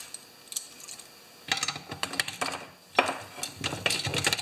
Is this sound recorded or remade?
recorded